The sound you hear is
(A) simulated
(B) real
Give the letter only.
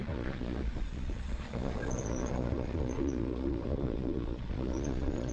A